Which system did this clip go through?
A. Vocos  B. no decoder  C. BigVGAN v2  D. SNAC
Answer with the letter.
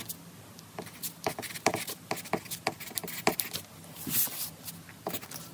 B